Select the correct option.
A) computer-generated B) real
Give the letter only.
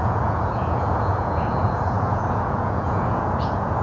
A